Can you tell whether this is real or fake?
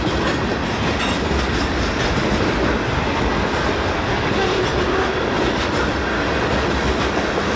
real